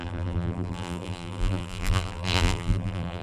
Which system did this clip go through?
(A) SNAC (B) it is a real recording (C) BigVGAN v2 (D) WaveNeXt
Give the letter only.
C